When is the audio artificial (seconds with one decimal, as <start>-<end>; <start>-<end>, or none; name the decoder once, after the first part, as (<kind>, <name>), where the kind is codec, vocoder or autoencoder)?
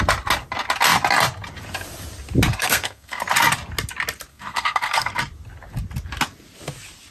2.5-3.2 (codec, SNAC); 4.3-5.1